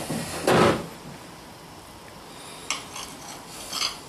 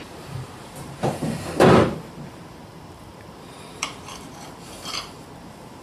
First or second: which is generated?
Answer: second